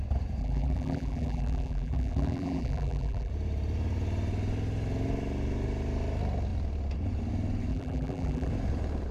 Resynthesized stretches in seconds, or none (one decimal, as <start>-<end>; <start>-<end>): 0.4-3.3; 7.7-8.5